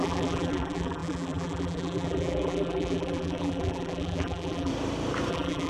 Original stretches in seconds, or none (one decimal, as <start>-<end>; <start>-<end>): 4.7-5.3